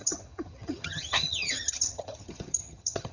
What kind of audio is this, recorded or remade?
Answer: remade